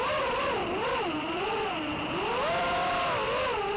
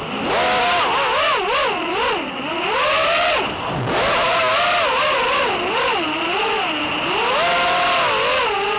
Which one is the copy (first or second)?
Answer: first